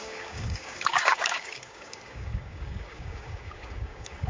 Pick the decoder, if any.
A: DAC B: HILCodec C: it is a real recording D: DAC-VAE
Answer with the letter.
A